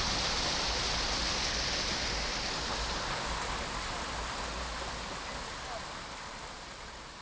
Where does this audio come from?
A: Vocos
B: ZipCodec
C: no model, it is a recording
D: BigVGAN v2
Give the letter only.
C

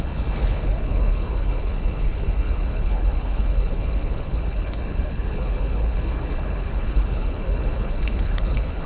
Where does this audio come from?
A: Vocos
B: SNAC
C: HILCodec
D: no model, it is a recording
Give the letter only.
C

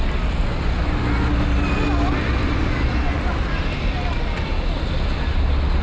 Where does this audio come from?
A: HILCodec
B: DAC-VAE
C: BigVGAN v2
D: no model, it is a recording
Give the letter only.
D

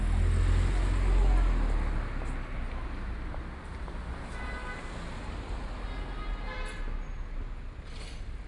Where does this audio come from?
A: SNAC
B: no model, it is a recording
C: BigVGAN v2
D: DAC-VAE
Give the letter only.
B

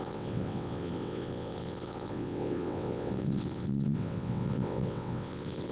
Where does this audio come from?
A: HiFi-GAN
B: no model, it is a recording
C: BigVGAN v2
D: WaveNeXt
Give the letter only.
D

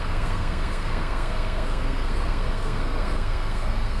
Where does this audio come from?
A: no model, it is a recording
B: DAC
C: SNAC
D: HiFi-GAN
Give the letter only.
C